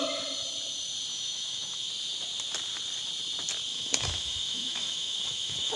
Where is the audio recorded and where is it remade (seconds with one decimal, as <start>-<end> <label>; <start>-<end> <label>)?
0.0-1.1 recorded; 1.1-1.9 remade; 1.9-3.7 recorded; 3.7-5.8 remade